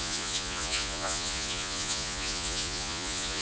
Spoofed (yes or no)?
yes